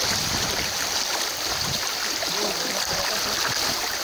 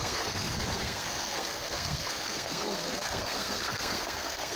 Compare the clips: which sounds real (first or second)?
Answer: first